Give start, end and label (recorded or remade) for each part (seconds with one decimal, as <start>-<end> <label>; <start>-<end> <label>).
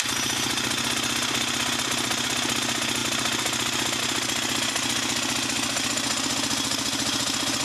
0.0-7.6 recorded